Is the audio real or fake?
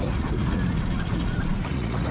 fake